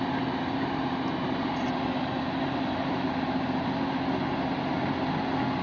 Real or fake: real